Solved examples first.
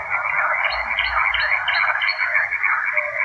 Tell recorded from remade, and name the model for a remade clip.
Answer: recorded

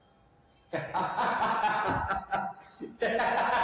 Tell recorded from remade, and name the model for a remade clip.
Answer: recorded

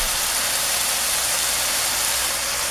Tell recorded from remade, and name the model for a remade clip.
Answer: recorded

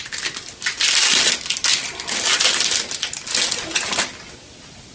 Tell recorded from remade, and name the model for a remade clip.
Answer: recorded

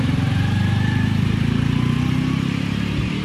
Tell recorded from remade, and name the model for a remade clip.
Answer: remade, vocoder, BigVGAN v2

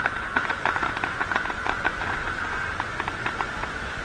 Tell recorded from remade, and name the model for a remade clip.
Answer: remade, vocoder, Vocos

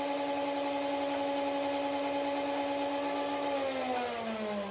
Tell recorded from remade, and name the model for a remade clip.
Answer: recorded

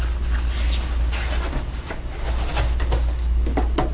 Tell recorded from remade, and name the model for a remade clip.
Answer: recorded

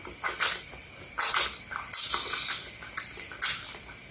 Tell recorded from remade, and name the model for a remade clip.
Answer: recorded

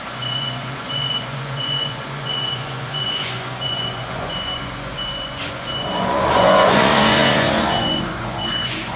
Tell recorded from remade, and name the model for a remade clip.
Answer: remade, vocoder, Vocos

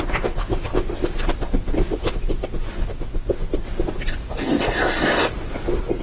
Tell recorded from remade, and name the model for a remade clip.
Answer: remade, vocoder, BigVGAN v2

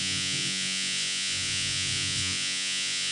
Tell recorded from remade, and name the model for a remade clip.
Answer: remade, vocoder, Vocos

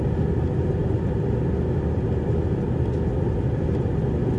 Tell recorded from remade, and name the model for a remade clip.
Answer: recorded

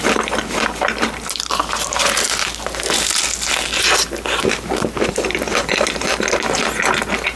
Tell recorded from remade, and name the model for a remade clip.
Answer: remade, vocoder, BigVGAN v2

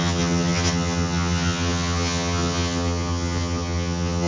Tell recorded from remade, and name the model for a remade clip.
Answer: remade, vocoder, HiFi-GAN